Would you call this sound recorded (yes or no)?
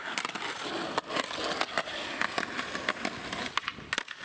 yes